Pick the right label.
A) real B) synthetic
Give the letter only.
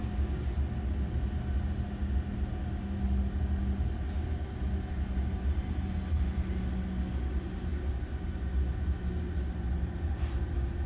A